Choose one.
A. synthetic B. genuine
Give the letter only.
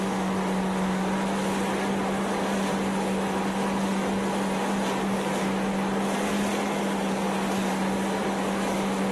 B